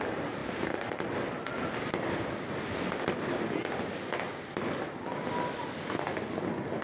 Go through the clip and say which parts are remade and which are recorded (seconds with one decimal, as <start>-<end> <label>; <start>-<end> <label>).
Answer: 0.0-6.8 recorded